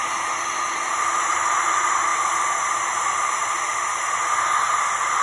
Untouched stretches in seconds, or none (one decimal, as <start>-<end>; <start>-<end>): 0.0-5.2